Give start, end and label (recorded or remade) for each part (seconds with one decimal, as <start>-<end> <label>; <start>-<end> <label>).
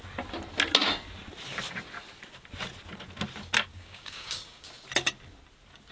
0.0-3.7 recorded; 3.7-4.7 remade; 4.7-5.9 recorded